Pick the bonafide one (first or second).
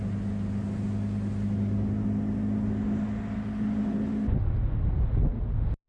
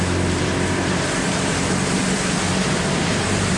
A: first